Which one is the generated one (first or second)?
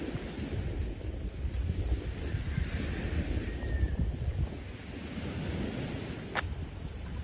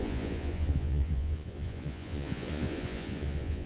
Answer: second